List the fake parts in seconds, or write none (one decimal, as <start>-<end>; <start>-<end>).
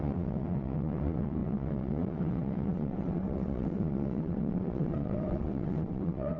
0.0-6.4